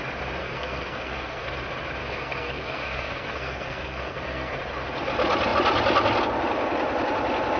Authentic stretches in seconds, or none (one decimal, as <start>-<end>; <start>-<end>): 0.0-0.4; 1.5-2.0; 4.6-7.6

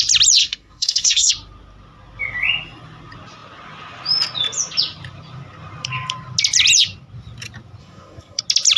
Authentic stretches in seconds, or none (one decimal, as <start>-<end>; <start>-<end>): 0.0-0.4; 1.3-7.8; 8.4-8.8

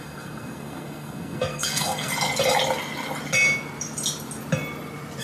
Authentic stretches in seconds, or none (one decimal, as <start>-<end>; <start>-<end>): 2.1-5.2

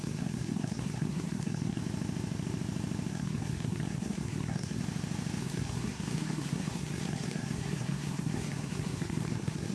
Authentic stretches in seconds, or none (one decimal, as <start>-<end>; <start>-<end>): 1.8-3.1; 4.8-5.4